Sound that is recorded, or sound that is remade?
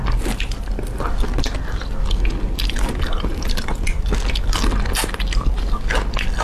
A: recorded